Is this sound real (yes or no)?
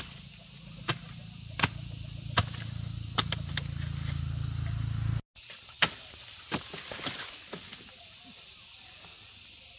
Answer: yes